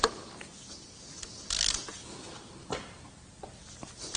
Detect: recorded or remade recorded